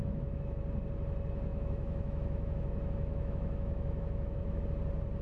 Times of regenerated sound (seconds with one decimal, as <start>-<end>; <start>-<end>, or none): 0.0-0.6; 1.5-4.6